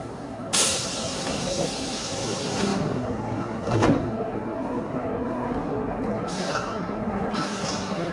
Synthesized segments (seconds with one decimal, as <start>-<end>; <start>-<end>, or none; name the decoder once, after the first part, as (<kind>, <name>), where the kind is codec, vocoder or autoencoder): 0.0-8.1 (codec, SNAC)